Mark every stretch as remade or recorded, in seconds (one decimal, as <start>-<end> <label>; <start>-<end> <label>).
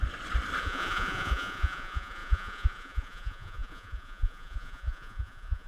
0.0-0.6 recorded; 0.6-5.7 remade